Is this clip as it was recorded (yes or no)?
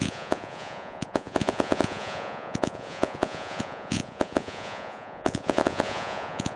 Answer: no